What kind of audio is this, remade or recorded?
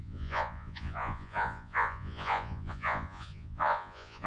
remade